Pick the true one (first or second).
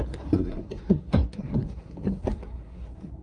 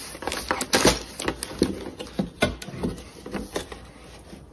second